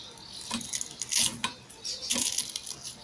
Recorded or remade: recorded